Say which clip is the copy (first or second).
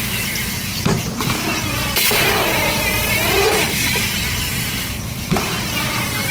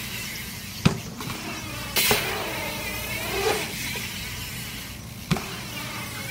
first